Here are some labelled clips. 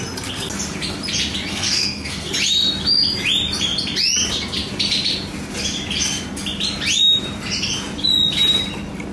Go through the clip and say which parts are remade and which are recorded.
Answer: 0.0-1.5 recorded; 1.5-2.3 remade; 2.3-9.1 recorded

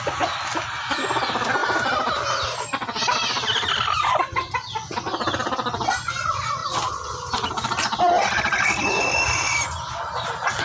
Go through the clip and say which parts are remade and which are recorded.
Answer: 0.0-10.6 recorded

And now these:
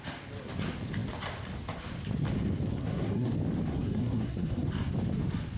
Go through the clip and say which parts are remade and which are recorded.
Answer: 0.0-2.7 recorded; 2.7-3.3 remade; 3.3-3.7 recorded; 3.7-4.7 remade; 4.7-5.6 recorded